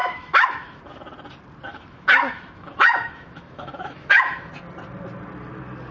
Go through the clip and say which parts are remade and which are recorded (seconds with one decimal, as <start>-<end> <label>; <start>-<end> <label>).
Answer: 0.0-0.8 remade; 0.8-1.7 recorded; 1.7-4.5 remade; 4.5-5.9 recorded